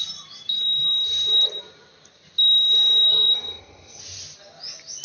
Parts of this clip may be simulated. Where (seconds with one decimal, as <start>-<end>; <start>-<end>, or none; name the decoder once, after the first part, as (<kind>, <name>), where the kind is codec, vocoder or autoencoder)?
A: 3.1-4.0 (codec, SNAC)